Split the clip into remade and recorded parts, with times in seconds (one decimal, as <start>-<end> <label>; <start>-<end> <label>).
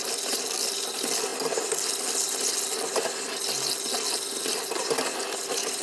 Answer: 0.0-5.8 recorded